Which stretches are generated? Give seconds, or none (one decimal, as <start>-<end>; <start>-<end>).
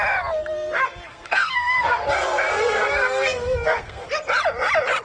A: 1.1-4.1